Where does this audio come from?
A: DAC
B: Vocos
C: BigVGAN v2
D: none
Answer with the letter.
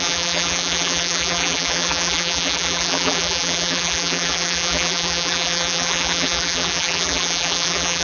C